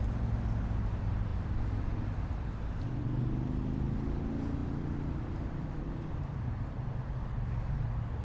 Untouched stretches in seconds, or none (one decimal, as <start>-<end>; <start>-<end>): 0.0-4.6; 6.7-8.2